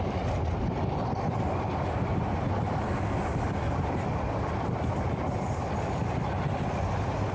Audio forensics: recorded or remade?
recorded